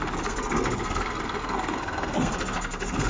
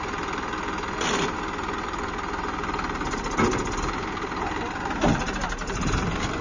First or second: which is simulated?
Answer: first